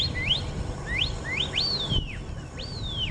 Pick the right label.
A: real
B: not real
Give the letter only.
A